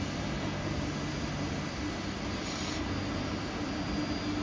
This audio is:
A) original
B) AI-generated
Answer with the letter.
A